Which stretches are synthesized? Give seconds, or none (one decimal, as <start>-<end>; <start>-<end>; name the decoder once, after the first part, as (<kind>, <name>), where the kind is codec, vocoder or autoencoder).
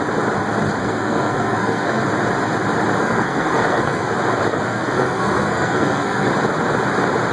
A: 0.8-2.0 (codec, SNAC); 3.0-4.1; 4.5-6.3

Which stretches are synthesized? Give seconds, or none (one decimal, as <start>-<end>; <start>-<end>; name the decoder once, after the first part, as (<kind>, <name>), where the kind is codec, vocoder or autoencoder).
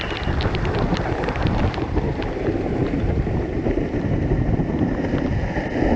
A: 0.9-4.5 (vocoder, BigVGAN v2)